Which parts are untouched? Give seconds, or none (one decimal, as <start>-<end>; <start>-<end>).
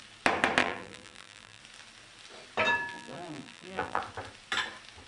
0.0-0.6; 1.6-2.9; 4.0-5.1